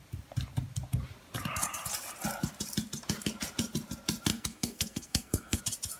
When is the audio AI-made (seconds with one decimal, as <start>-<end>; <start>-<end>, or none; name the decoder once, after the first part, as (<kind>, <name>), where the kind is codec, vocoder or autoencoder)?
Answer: 4.3-5.6 (codec, SNAC)